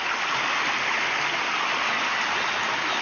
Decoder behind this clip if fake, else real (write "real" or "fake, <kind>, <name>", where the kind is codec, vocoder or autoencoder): real